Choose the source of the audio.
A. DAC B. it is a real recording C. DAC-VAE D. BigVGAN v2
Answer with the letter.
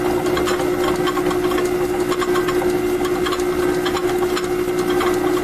B